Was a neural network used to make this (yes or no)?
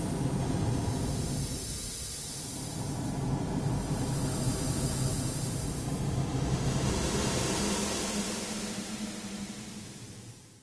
no